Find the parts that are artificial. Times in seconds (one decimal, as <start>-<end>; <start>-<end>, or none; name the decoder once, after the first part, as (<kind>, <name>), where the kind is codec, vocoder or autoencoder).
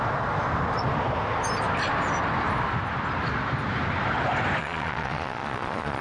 4.6-6.0 (vocoder, Vocos)